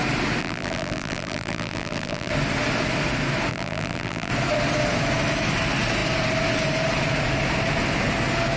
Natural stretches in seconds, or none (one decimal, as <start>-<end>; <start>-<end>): 0.0-0.4; 2.3-3.5; 4.3-8.6